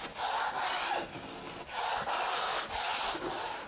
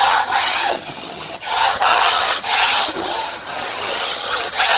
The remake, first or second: second